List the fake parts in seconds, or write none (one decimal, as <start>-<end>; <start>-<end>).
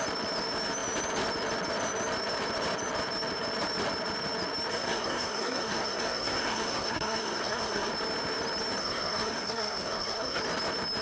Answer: 4.7-7.9; 8.8-10.4